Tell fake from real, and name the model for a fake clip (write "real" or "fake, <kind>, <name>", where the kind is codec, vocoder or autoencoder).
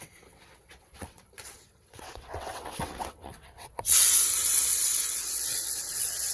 fake, vocoder, WaveNeXt